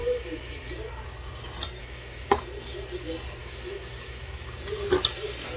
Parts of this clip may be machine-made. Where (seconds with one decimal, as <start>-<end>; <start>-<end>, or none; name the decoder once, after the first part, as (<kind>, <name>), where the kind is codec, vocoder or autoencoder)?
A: 0.0-0.7 (autoencoder, DAC-VAE); 1.8-2.3; 3.4-4.5